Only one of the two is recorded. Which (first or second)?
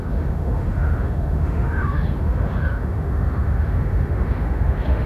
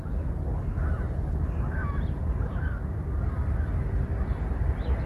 second